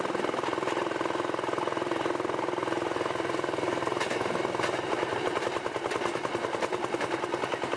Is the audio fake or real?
real